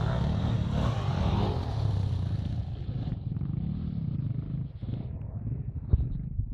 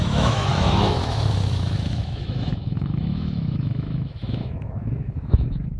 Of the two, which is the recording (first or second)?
first